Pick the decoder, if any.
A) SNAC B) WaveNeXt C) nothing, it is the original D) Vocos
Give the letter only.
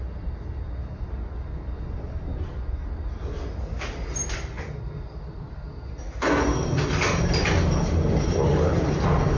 C